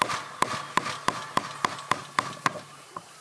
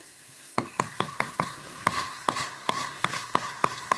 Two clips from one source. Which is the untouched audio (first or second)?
first